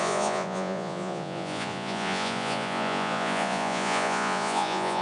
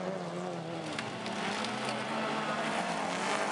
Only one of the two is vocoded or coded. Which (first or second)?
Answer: first